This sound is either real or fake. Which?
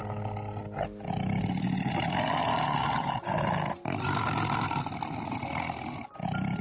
real